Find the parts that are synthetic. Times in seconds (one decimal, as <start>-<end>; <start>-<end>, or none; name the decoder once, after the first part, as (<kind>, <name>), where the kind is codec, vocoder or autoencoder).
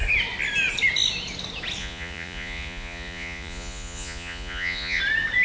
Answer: 1.8-5.0 (vocoder, Vocos)